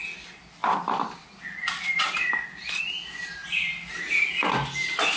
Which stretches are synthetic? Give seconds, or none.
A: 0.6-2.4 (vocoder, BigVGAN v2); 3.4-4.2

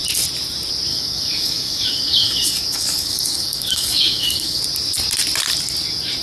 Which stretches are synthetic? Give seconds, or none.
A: 0.9-4.6 (codec, DAC)

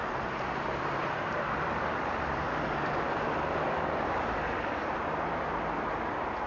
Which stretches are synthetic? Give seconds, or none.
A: 0.8-6.5 (vocoder, BigVGAN v2)

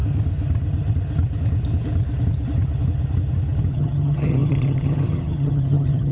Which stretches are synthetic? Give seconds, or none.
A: 3.7-6.1 (vocoder, HiFi-GAN)

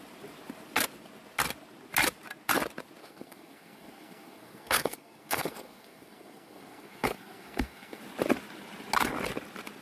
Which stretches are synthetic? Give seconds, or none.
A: 3.0-8.0 (codec, SNAC)

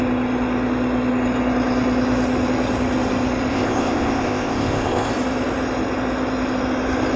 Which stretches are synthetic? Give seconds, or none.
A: 3.5-5.1 (codec, ZipCodec)